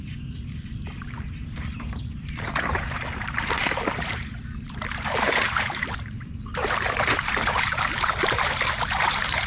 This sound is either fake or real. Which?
fake